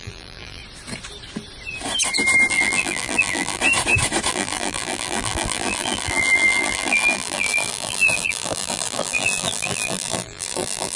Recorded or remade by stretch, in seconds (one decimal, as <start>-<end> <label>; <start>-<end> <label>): 0.0-0.6 remade; 0.6-2.5 recorded; 2.5-3.6 remade; 3.6-4.3 recorded; 4.3-11.0 remade